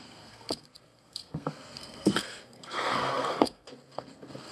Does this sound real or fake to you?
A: fake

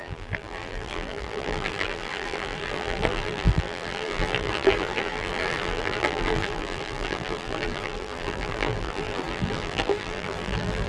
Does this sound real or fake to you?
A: fake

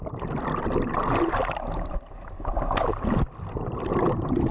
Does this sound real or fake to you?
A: real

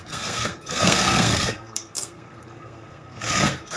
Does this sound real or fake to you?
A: fake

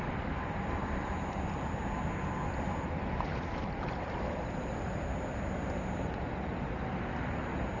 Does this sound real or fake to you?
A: real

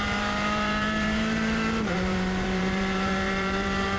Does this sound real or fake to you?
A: fake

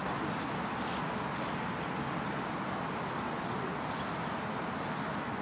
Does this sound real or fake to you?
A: real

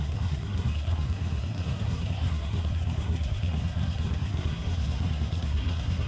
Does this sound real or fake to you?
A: fake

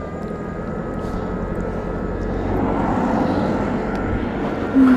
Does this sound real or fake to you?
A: real